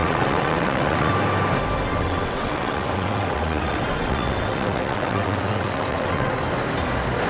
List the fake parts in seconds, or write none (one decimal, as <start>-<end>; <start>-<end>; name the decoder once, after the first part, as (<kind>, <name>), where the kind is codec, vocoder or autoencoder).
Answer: 0.0-1.1 (vocoder, WaveNeXt); 1.9-6.3

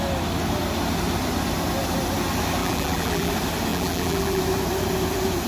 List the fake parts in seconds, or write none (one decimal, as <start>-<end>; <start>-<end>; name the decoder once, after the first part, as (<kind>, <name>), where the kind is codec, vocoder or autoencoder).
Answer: 2.6-3.3 (vocoder, BigVGAN v2); 3.7-4.4

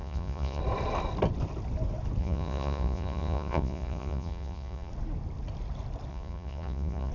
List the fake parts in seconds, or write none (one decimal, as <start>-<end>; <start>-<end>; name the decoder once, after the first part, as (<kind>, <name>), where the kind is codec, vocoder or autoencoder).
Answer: 0.0-0.6 (vocoder, Vocos); 2.2-4.9; 6.1-7.1